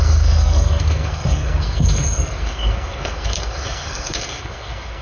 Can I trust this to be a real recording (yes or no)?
no